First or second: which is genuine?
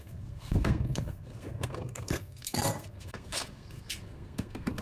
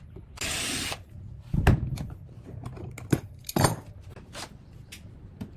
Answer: second